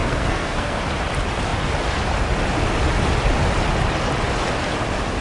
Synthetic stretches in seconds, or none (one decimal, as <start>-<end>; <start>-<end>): 0.0-0.8